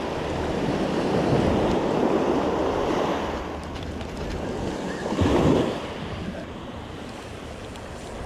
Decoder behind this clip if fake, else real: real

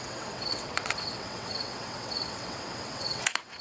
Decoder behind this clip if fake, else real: fake, vocoder, WaveNeXt